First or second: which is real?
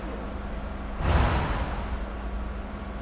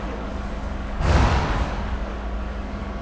first